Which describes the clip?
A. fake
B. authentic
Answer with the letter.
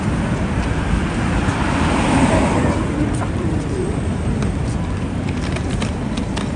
A